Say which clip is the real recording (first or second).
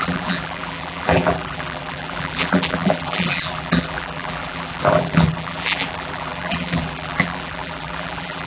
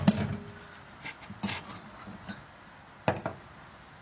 second